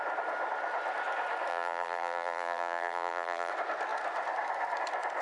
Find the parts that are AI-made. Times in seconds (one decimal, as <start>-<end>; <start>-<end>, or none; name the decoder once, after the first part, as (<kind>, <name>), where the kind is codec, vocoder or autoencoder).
1.5-3.5 (vocoder, BigVGAN v2)